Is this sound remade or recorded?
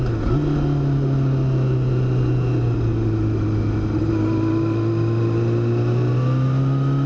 recorded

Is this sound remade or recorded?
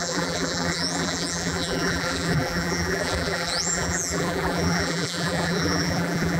remade